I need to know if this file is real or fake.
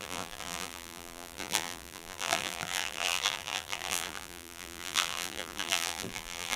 fake